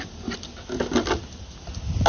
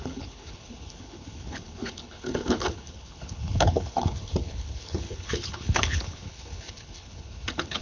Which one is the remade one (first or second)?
second